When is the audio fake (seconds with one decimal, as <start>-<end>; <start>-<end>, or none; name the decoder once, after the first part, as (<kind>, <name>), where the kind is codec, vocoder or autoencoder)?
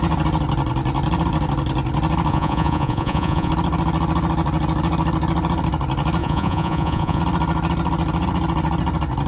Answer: 2.3-3.5 (vocoder, Vocos); 6.2-7.2